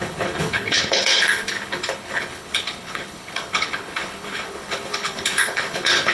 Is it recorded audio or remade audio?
remade